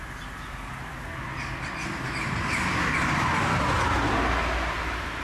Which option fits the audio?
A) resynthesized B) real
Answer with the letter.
B